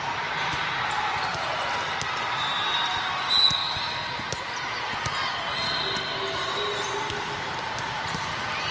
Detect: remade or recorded recorded